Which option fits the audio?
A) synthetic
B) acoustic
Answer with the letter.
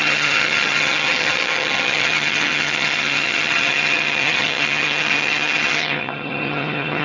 A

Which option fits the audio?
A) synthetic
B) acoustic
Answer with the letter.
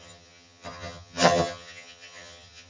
A